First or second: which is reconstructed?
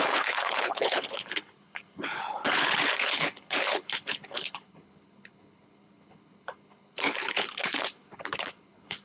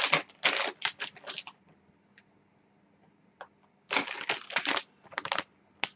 first